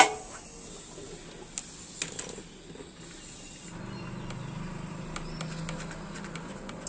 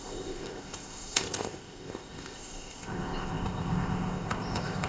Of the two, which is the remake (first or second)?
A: second